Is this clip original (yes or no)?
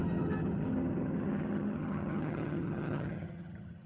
no